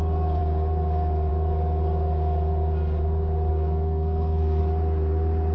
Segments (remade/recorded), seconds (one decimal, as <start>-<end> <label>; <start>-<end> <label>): 0.0-3.5 recorded; 3.5-4.6 remade; 4.6-5.5 recorded